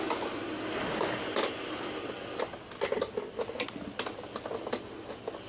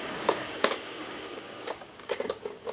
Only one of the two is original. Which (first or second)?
first